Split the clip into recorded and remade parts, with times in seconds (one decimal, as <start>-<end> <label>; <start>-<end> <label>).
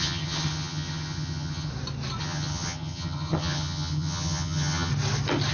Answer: 0.0-1.7 remade; 1.7-2.2 recorded; 2.2-4.9 remade; 4.9-5.5 recorded